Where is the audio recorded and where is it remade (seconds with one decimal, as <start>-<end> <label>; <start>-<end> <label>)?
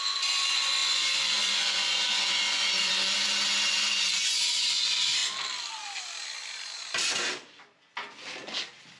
0.0-2.9 remade; 2.9-3.7 recorded; 3.7-5.2 remade; 5.2-9.0 recorded